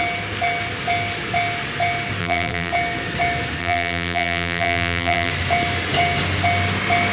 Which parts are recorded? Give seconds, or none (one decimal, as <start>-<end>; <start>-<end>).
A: 0.0-2.2; 2.7-3.6; 5.3-7.1